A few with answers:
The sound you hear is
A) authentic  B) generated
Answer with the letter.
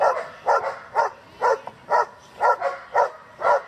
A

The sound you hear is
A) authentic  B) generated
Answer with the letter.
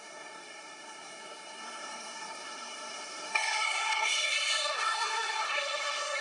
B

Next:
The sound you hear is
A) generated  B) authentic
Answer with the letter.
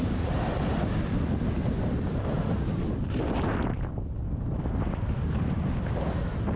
B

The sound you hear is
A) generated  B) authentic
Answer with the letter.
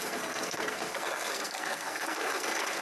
A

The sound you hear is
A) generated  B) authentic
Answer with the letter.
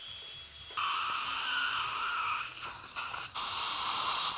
B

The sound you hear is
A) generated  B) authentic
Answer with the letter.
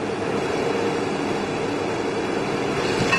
B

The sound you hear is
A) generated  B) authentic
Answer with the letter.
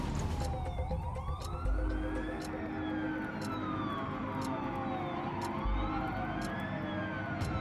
B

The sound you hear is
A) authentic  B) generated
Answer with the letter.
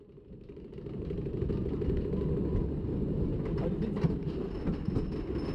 A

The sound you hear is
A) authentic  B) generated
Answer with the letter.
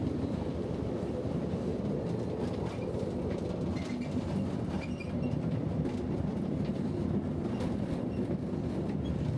A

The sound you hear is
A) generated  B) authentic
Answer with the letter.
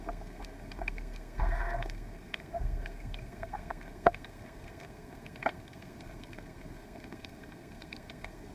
A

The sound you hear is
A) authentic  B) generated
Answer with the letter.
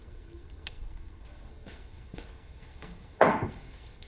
B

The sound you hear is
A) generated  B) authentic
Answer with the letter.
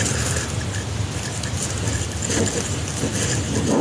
B